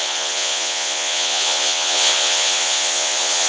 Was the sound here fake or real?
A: fake